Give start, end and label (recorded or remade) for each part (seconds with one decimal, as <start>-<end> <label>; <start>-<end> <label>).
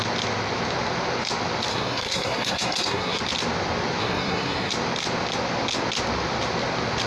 0.0-1.7 recorded; 1.7-3.2 remade; 3.2-4.0 recorded; 4.0-4.7 remade; 4.7-7.1 recorded